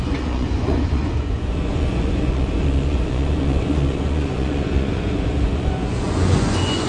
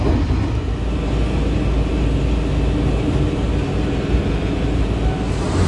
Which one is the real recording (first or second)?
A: second